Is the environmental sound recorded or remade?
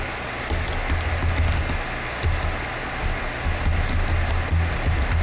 recorded